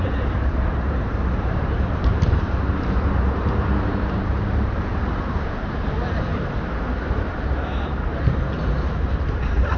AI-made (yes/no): yes